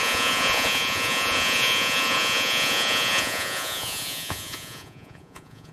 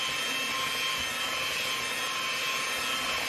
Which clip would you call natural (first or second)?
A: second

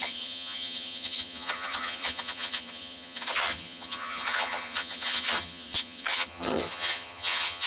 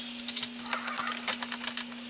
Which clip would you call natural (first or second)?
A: second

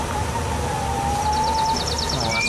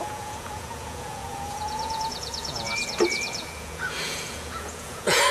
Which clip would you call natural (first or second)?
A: first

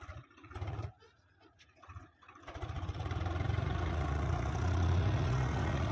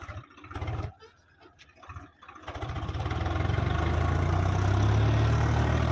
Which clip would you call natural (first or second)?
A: second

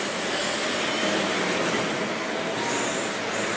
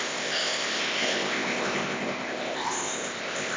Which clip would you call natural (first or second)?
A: first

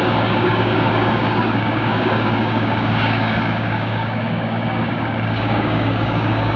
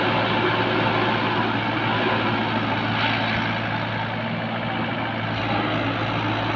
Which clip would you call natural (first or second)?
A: second